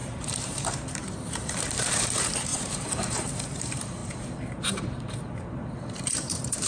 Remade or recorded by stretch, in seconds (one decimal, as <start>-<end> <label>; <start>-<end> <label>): 0.0-6.7 remade